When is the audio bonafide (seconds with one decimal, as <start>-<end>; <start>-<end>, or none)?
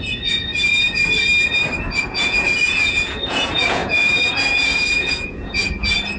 0.5-2.0; 5.6-6.2